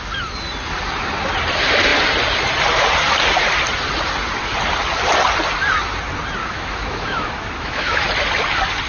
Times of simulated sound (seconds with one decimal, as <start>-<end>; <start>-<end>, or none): 6.4-8.0